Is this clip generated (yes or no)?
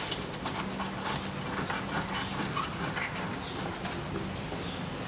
no